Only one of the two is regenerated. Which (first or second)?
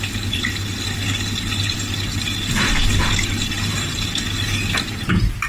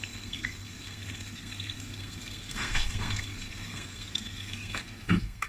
second